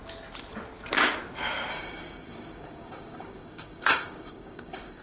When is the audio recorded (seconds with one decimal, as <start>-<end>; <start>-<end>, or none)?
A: 0.0-1.7